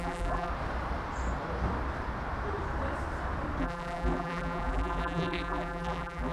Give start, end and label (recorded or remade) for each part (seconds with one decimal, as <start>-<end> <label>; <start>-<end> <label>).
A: 0.0-0.5 remade; 0.5-3.6 recorded; 3.6-6.3 remade